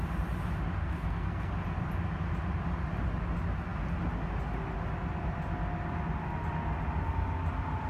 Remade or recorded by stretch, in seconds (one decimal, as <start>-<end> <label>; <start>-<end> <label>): 0.0-0.8 recorded; 0.8-1.5 remade; 1.5-7.9 recorded